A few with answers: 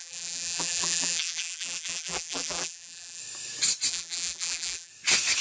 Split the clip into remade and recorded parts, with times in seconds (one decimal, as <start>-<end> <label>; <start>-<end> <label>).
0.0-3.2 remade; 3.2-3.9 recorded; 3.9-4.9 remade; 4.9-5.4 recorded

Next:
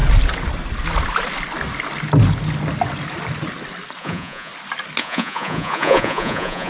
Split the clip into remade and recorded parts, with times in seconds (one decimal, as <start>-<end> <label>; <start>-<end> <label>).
0.0-4.0 recorded; 4.0-4.5 remade; 4.5-5.0 recorded; 5.0-6.7 remade

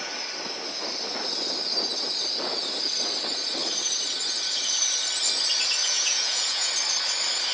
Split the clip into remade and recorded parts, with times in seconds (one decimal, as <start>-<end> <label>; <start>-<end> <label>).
0.0-5.8 recorded; 5.8-6.7 remade; 6.7-7.5 recorded

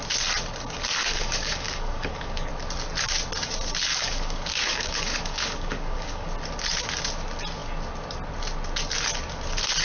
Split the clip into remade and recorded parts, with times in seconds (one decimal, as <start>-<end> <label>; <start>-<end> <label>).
0.0-1.0 recorded; 1.0-2.5 remade; 2.5-3.9 recorded; 3.9-6.3 remade; 6.3-9.8 recorded

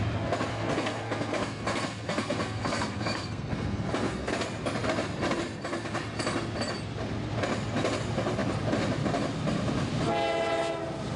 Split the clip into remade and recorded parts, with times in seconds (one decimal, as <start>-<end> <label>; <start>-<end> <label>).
0.0-0.5 recorded; 0.5-4.3 remade; 4.3-11.2 recorded

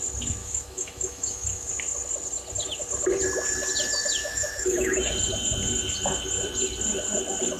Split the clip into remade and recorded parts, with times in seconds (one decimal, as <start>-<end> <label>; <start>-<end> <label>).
0.0-0.4 recorded; 0.4-1.7 remade; 1.7-4.2 recorded; 4.2-5.1 remade; 5.1-7.6 recorded

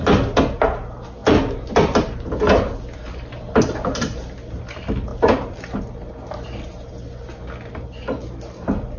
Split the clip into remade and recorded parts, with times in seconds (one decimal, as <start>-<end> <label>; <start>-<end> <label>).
0.0-9.0 recorded

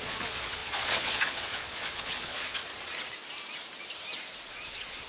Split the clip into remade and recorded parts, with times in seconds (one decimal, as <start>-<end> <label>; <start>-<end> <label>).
0.0-2.6 remade; 2.6-4.5 recorded; 4.5-5.1 remade